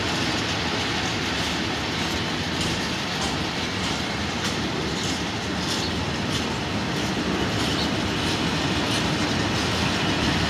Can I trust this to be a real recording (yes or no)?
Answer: yes